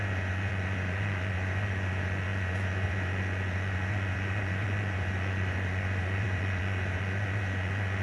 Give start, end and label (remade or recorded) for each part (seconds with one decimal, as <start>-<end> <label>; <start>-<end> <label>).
0.0-8.0 remade